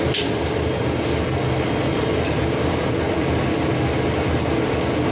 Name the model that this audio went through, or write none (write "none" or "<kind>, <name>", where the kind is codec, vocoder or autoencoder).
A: none